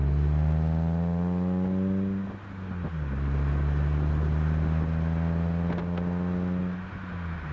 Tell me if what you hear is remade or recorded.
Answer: recorded